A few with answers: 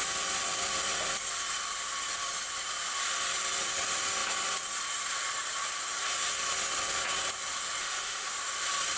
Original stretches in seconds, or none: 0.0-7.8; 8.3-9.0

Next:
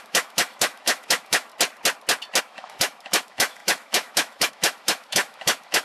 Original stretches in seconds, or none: 1.5-2.4